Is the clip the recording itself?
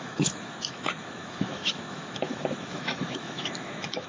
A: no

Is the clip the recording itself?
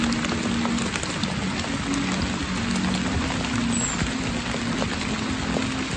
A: yes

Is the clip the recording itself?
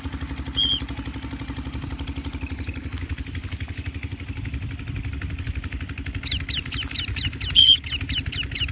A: yes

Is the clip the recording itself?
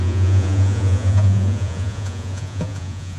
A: no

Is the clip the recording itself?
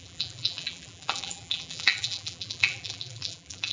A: no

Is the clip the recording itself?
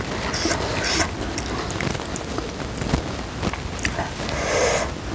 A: yes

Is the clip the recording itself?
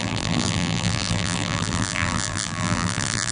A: no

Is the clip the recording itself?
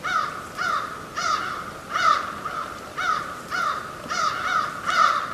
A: yes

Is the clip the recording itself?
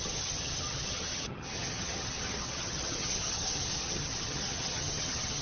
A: no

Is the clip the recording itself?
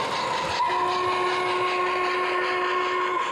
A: yes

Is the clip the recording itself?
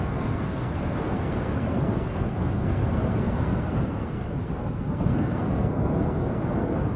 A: no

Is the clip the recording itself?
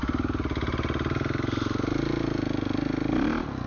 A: yes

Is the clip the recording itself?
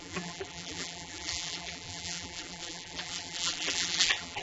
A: no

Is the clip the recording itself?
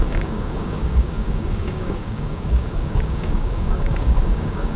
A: no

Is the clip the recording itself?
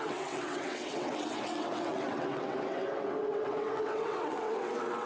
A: no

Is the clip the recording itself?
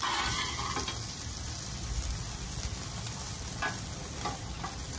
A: yes